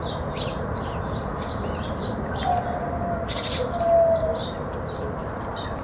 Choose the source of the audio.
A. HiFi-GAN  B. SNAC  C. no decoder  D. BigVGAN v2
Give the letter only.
C